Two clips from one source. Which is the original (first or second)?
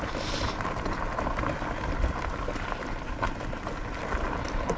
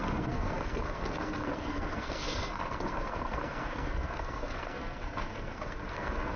first